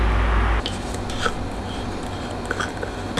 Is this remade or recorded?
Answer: recorded